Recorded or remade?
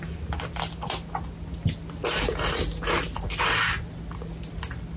recorded